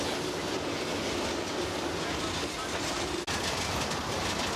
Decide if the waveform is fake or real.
real